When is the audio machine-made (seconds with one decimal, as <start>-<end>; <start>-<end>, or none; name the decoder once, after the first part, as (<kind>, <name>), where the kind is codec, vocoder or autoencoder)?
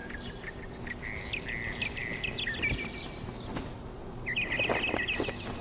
none